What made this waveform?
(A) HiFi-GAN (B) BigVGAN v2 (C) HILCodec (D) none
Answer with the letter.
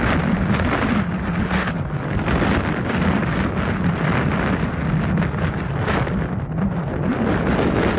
D